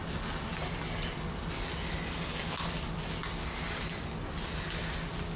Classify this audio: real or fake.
real